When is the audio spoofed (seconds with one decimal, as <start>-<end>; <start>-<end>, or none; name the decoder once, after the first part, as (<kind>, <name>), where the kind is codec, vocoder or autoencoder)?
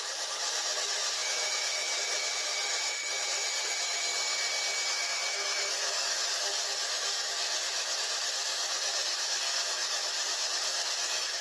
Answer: 0.0-4.1 (autoencoder, DAC-VAE); 4.9-11.4